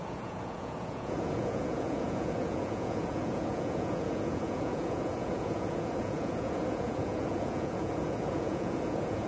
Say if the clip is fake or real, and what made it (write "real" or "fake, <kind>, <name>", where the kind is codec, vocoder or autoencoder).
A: fake, vocoder, Vocos